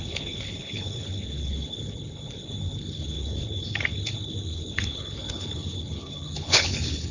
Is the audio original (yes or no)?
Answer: no